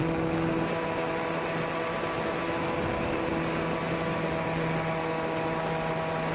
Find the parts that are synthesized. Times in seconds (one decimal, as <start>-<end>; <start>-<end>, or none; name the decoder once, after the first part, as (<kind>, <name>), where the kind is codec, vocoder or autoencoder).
none